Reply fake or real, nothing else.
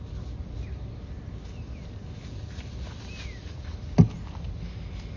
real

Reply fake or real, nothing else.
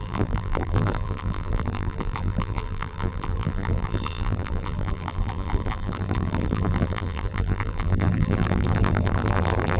fake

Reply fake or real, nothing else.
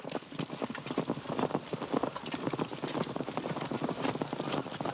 real